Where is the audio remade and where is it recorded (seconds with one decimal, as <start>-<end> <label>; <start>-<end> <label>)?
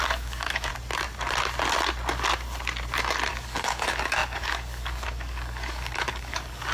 0.0-0.7 remade; 0.7-3.3 recorded; 3.3-6.7 remade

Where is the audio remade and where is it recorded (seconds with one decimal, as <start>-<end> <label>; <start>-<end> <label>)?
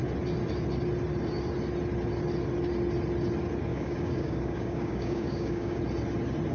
0.0-3.7 recorded; 3.7-5.8 remade; 5.8-6.5 recorded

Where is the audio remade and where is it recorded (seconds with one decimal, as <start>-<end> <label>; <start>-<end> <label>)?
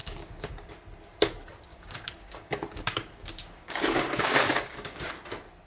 0.0-0.7 remade; 0.7-1.7 recorded; 1.7-5.1 remade; 5.1-5.7 recorded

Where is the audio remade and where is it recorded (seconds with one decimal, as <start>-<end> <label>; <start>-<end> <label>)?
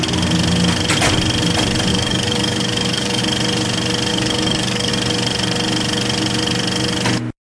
0.0-1.9 recorded; 1.9-3.2 remade; 3.2-4.1 recorded; 4.1-4.9 remade; 4.9-7.4 recorded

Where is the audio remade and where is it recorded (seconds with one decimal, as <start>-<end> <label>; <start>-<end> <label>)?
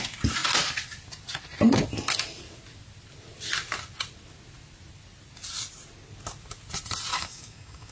0.0-7.1 recorded; 7.1-7.9 remade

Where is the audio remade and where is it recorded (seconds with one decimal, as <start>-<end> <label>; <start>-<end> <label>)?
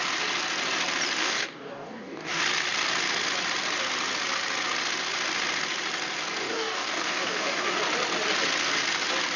0.0-1.2 recorded; 1.2-2.4 remade; 2.4-6.4 recorded; 6.4-7.8 remade; 7.8-9.4 recorded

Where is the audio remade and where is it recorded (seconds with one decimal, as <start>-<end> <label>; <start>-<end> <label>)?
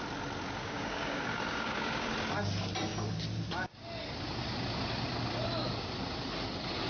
0.0-0.6 recorded; 0.6-2.1 remade; 2.1-6.9 recorded